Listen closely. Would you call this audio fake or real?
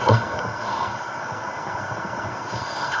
fake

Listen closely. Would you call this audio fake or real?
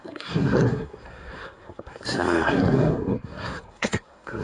fake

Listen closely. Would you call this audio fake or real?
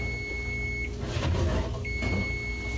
real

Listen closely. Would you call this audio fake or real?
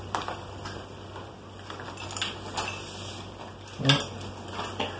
real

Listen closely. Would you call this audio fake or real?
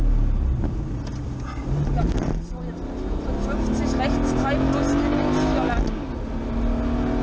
real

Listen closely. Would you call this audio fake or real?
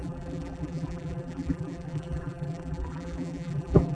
fake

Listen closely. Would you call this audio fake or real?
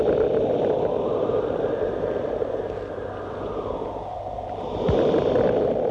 real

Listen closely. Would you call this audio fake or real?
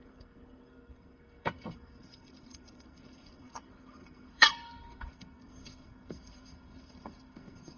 fake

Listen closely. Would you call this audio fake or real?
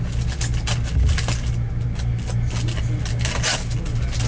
real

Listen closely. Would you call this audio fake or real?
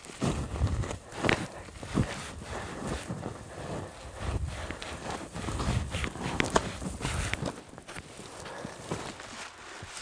real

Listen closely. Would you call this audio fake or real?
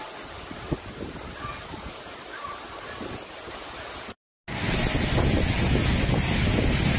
real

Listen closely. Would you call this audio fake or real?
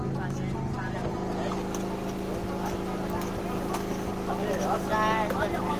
real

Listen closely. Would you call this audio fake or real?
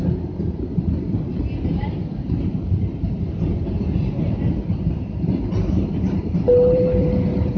fake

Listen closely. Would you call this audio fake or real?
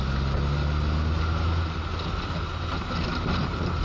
real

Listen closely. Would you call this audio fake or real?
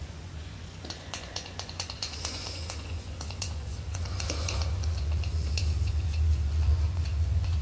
fake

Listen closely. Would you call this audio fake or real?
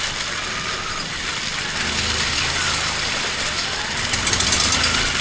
real